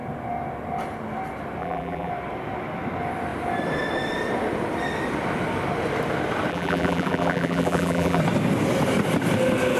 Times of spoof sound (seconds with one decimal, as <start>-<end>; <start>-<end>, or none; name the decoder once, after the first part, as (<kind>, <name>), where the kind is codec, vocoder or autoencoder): 1.6-2.1 (vocoder, BigVGAN v2); 6.5-8.2